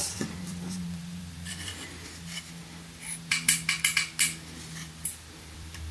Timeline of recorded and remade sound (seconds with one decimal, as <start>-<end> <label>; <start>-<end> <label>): 0.0-2.0 remade; 2.0-5.3 recorded; 5.3-5.9 remade